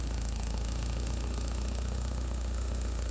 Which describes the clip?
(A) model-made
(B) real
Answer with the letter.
A